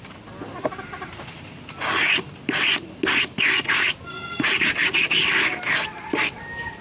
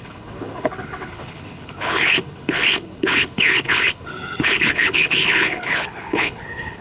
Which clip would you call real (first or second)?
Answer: first